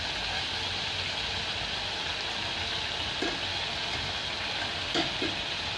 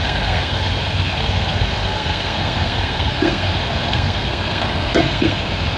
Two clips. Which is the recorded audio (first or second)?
first